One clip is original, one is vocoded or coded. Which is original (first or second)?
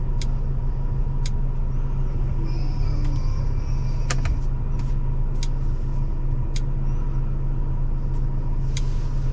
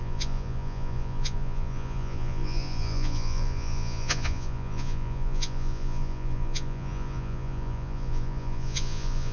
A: first